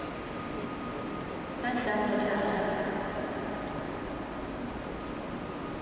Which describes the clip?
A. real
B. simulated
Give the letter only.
A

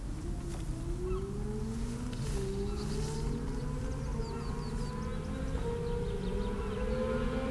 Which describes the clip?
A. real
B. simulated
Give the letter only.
A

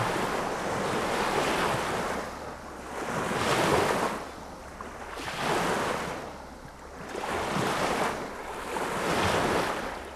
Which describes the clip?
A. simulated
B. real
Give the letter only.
B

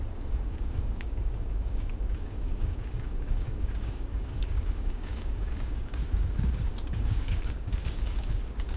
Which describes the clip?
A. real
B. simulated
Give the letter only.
B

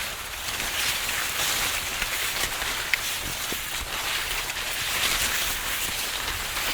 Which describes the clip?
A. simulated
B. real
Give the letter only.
A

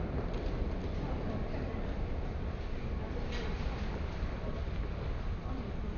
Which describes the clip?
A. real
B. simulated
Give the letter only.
A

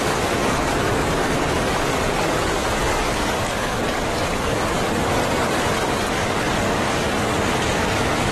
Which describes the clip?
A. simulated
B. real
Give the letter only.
A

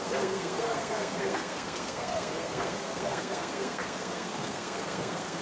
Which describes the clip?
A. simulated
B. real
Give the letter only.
A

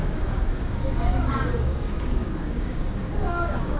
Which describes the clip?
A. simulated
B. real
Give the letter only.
A